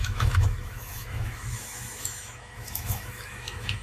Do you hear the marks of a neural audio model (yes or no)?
yes